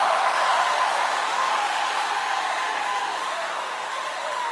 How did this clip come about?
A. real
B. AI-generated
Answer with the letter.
B